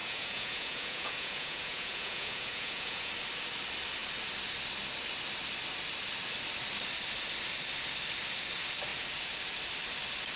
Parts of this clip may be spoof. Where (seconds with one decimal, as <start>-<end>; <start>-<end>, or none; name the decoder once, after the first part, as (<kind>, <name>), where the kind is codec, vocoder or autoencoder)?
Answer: 0.0-3.1 (vocoder, Vocos)